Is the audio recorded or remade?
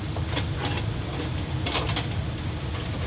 recorded